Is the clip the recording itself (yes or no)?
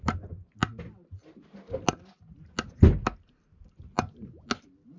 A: yes